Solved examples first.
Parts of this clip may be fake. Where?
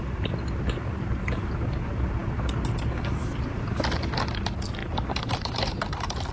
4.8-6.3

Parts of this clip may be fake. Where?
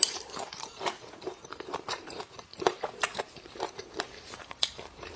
0.0-5.2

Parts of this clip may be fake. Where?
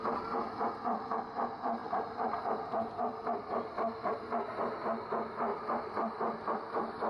0.0-1.1; 1.8-3.5; 5.5-6.2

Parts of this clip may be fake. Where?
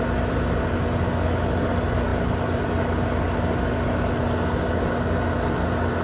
none